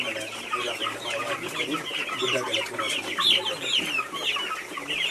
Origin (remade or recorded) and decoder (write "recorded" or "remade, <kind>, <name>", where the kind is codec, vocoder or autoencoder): recorded